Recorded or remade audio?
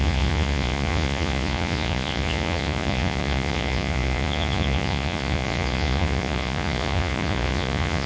remade